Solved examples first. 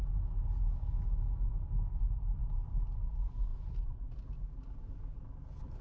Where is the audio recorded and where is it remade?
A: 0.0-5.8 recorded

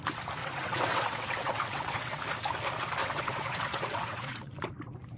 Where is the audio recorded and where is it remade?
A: 0.0-0.4 recorded; 0.4-2.2 remade; 2.2-3.0 recorded; 3.0-4.5 remade; 4.5-5.2 recorded